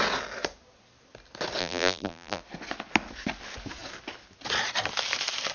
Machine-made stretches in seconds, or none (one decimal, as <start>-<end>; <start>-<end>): 1.6-2.4